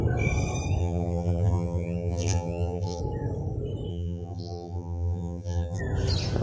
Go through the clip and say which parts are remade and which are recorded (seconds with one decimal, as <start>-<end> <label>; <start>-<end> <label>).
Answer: 0.0-0.8 recorded; 0.8-3.0 remade; 3.0-3.9 recorded; 3.9-5.8 remade; 5.8-6.4 recorded